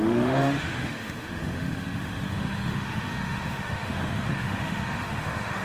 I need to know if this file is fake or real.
fake